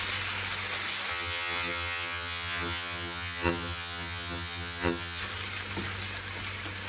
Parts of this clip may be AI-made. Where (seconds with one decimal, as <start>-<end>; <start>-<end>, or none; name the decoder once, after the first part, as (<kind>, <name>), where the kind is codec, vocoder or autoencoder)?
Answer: 1.1-5.2 (vocoder, HiFi-GAN)